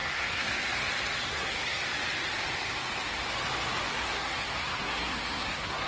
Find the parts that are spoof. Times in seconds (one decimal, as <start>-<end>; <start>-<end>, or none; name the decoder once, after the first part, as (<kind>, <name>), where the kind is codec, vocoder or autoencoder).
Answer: 0.0-0.5 (codec, SNAC); 1.3-1.8; 3.9-5.9